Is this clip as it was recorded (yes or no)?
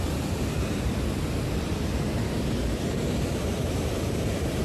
no